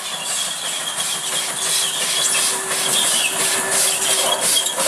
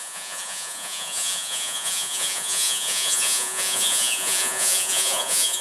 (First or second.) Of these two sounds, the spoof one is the second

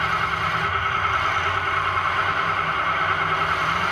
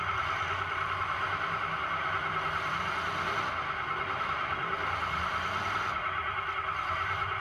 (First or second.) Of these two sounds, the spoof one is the second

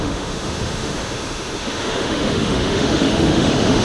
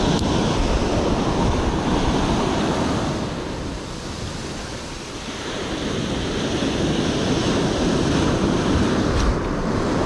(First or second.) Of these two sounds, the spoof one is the first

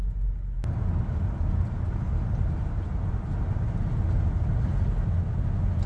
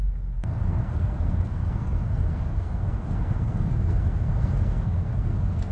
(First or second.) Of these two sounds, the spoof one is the second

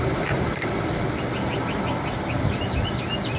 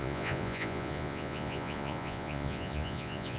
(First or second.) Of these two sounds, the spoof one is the second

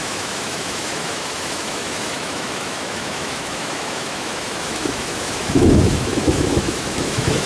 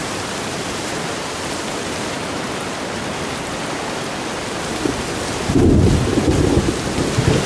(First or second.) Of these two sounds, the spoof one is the first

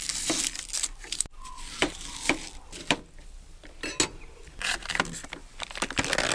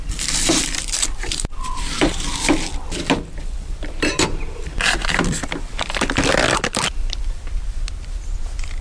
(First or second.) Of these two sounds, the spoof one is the second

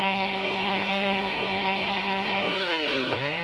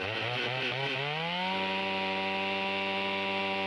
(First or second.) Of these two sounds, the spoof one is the first